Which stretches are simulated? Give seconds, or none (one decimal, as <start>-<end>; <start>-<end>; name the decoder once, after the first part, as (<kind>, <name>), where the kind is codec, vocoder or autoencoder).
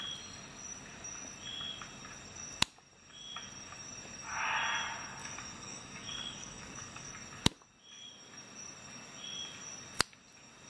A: 5.2-7.1 (codec, DAC)